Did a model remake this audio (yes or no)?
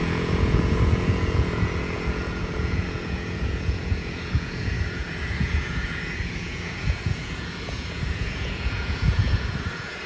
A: yes